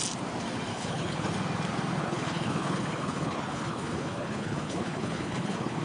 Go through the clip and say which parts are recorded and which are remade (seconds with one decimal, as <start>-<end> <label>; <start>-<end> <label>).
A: 0.0-0.7 recorded; 0.7-1.3 remade; 1.3-2.0 recorded; 2.0-5.8 remade